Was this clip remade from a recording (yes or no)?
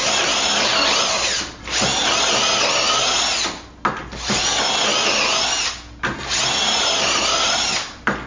no